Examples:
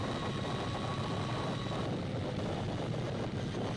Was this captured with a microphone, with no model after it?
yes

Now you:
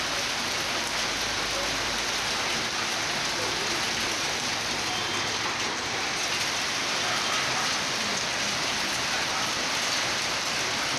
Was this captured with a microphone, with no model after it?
yes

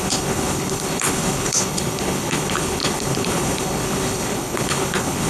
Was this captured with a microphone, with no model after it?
no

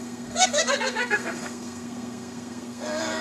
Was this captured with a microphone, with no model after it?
no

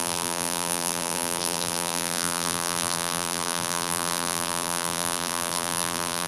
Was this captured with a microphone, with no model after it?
no